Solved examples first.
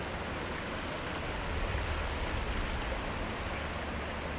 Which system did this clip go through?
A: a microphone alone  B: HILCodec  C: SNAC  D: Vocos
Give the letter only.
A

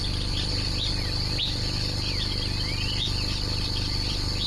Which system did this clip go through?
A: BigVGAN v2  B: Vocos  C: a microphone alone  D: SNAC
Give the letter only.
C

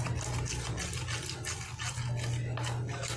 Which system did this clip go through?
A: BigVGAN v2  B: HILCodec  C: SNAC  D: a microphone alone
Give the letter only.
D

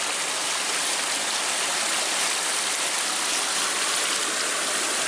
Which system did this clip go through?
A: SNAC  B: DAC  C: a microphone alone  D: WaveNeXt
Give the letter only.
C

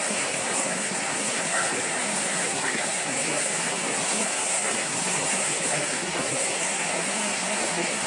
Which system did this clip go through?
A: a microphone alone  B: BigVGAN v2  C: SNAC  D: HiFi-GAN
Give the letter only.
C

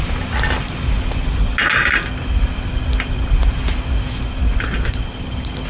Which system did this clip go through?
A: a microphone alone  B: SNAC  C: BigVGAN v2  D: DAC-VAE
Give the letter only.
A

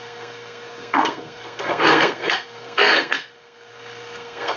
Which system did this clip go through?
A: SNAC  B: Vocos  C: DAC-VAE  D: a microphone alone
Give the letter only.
A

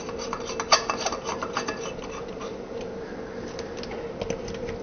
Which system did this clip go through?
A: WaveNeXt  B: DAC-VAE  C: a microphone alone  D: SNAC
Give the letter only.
C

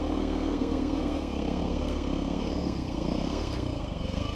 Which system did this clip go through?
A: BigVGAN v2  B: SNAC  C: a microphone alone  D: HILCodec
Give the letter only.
B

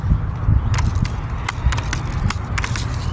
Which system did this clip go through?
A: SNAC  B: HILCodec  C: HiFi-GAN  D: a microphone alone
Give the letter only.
D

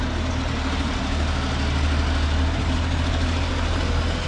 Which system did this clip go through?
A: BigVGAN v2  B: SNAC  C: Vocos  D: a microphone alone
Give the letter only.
D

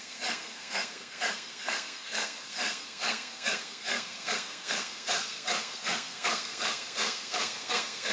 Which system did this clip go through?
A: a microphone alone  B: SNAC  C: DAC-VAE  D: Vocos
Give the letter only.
B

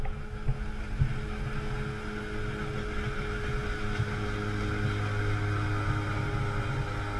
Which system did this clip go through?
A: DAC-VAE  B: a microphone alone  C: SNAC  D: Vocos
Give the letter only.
B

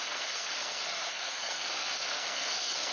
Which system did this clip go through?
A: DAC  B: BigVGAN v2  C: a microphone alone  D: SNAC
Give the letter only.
D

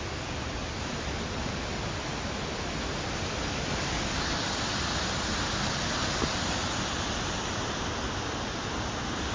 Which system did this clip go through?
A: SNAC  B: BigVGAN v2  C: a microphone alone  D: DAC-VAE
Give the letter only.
C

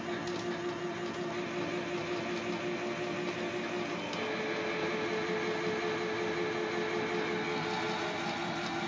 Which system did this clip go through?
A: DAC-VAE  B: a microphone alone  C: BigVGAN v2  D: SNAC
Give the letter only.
B